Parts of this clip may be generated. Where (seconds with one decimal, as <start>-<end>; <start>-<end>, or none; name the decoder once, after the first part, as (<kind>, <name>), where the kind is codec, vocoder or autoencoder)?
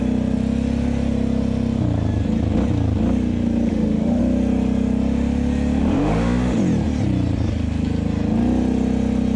3.7-4.2 (autoencoder, DAC-VAE); 5.8-6.6